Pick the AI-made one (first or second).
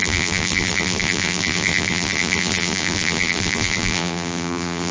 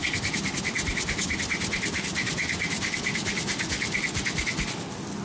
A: first